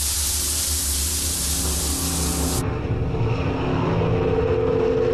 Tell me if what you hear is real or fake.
real